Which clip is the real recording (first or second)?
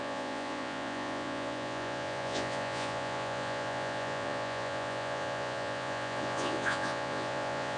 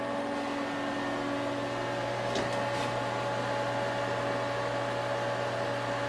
second